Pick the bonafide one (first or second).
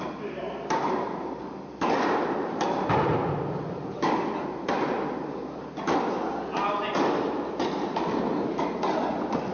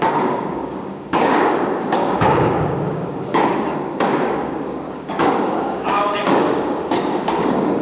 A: first